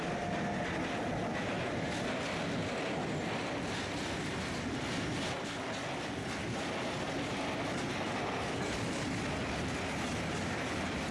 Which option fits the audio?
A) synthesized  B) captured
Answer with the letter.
B